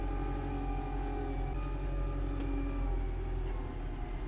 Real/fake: real